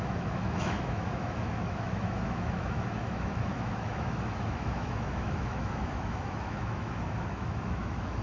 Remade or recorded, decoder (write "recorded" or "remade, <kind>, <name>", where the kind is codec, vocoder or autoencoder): remade, autoencoder, DAC-VAE